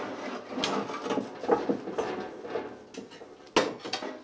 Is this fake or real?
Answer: real